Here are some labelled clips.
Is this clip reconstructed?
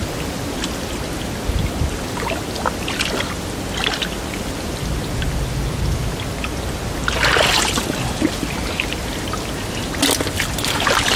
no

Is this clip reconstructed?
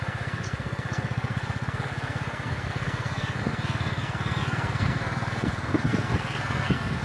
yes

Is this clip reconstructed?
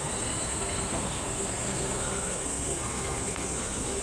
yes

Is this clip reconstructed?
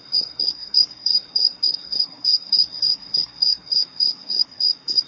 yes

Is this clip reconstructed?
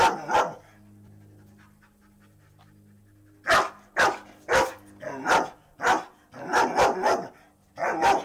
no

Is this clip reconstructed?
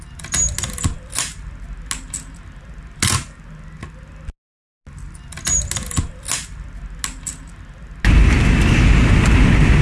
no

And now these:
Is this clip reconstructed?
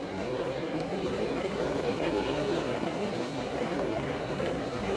yes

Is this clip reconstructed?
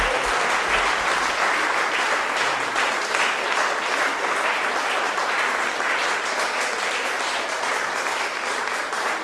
no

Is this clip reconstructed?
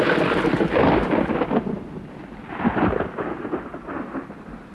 no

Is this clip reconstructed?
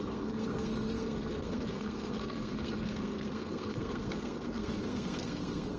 yes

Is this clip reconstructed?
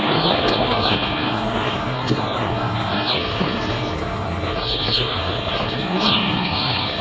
yes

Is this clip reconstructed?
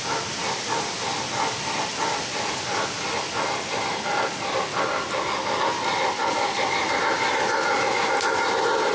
no